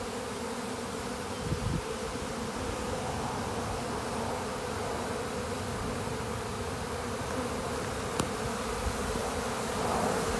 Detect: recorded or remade recorded